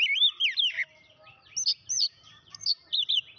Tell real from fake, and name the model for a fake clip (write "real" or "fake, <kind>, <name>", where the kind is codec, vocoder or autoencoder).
real